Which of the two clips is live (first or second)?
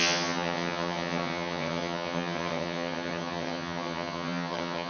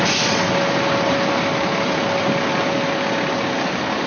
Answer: second